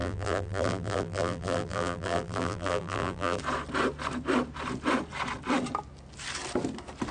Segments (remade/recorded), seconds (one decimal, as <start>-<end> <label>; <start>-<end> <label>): 0.0-3.4 remade; 3.4-7.1 recorded